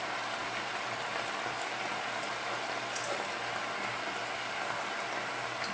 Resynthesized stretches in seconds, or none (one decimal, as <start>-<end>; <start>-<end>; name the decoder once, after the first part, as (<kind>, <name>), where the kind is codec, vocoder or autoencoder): none